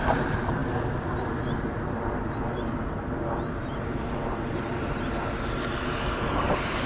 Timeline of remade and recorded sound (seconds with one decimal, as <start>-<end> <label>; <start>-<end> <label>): 0.0-6.9 recorded